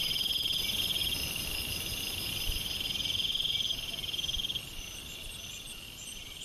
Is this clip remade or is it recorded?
remade